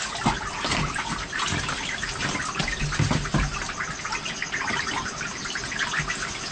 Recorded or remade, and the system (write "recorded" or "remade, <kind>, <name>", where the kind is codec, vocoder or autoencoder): recorded